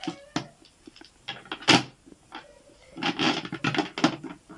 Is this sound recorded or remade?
recorded